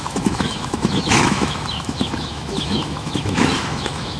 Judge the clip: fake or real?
fake